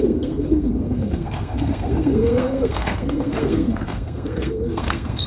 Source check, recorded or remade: remade